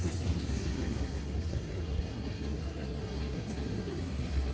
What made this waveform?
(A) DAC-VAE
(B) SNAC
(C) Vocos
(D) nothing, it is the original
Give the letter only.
B